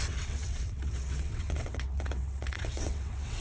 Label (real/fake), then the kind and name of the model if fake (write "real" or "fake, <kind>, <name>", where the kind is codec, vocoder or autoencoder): fake, vocoder, WaveNeXt